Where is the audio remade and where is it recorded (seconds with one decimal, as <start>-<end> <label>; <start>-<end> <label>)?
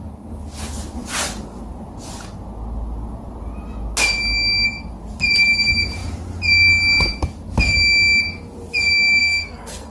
0.0-9.2 recorded; 9.2-9.9 remade